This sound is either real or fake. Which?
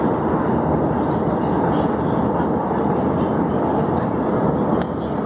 real